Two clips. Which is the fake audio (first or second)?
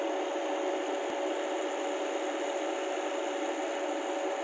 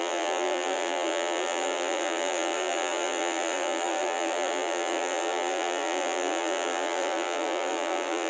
second